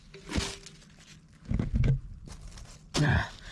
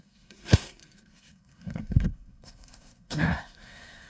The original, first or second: first